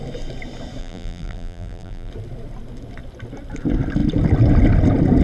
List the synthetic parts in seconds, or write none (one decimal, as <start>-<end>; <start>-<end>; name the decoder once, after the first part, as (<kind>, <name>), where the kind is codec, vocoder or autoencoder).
0.8-2.1 (vocoder, BigVGAN v2)